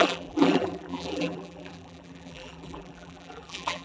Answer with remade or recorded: remade